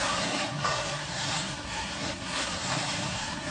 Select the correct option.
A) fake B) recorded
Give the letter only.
A